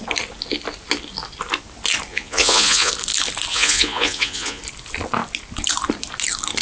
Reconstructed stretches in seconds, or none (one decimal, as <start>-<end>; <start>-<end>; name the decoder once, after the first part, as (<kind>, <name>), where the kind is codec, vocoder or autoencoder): 2.1-2.9 (vocoder, Vocos); 3.5-4.6